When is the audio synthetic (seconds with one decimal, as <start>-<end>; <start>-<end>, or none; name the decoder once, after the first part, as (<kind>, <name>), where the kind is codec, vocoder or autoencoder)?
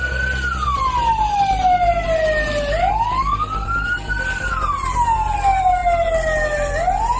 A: none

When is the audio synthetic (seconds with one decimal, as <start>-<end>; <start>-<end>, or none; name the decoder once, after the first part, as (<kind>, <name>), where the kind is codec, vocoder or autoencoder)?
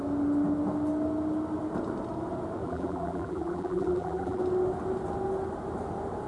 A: 2.6-4.4 (vocoder, BigVGAN v2)